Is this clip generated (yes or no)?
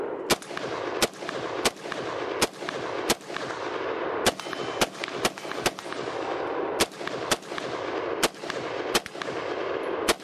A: no